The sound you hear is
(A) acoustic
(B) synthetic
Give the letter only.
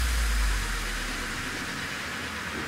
A